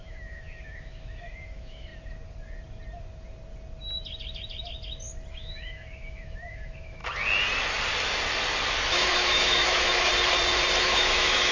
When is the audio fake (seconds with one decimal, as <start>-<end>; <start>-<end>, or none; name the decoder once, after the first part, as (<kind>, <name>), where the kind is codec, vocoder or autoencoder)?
0.0-1.9 (autoencoder, DAC-VAE); 5.3-7.0; 8.9-10.1; 10.8-11.5